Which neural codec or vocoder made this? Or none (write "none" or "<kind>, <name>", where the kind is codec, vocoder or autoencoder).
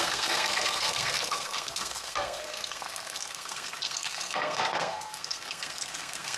codec, SNAC